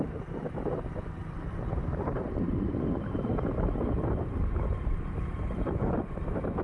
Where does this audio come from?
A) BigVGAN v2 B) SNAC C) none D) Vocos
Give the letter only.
A